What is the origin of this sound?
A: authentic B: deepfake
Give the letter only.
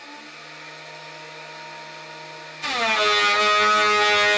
A